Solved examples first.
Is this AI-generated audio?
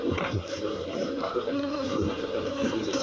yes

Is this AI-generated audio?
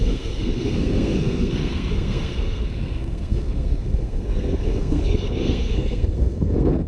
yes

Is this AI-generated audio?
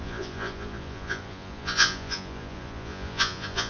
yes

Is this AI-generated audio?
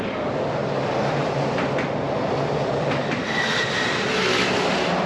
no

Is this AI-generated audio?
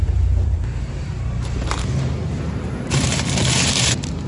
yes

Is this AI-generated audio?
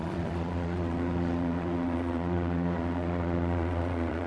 yes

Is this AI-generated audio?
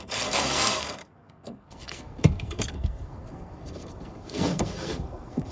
yes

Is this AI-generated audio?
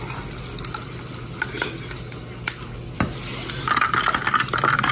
no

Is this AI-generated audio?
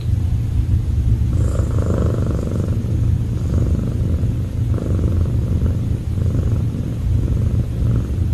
no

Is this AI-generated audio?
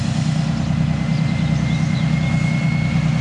no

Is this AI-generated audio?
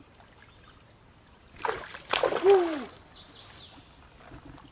no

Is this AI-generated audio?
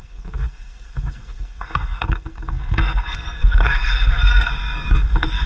yes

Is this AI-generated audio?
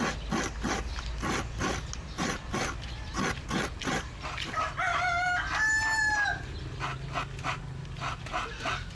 no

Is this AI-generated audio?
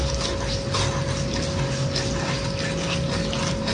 no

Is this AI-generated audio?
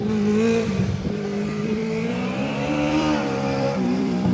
yes